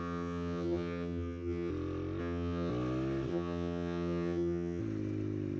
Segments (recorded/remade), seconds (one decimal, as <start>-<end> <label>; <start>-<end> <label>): 0.0-1.7 remade; 1.7-2.2 recorded; 2.2-2.7 remade; 2.7-3.3 recorded; 3.3-4.8 remade; 4.8-5.6 recorded